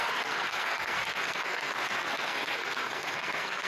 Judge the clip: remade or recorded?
remade